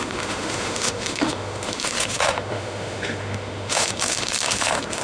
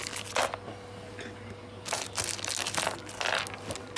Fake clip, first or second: first